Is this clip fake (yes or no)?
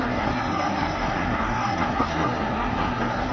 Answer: yes